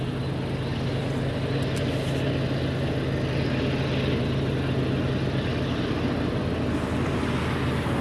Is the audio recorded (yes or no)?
yes